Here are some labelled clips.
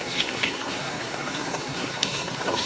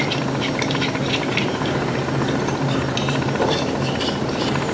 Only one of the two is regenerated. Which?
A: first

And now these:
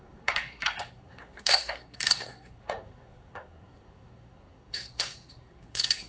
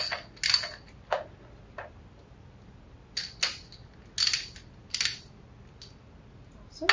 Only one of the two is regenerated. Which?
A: first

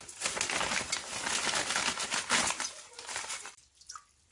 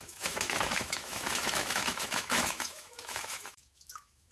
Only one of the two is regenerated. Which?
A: second